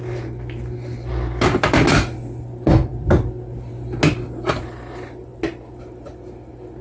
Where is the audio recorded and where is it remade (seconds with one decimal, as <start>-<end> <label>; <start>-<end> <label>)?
0.0-6.8 recorded